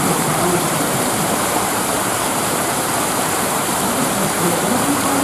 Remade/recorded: remade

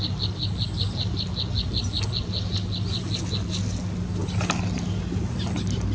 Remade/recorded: recorded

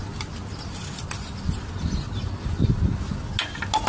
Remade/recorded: recorded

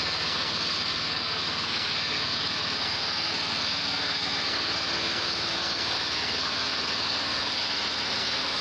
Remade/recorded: remade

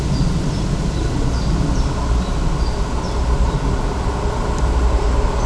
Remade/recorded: recorded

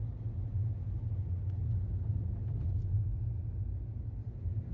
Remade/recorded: recorded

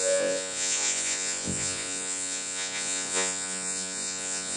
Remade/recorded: remade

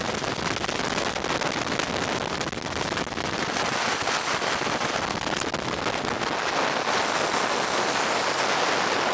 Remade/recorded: recorded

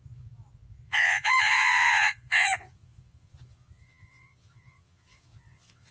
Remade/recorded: remade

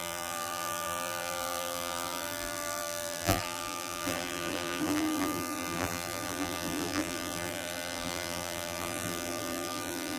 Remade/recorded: remade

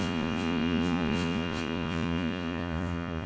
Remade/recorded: remade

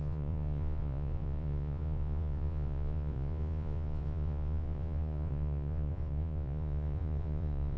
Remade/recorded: remade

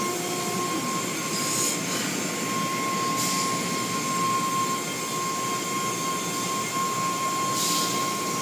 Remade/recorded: recorded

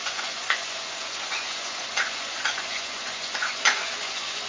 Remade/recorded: remade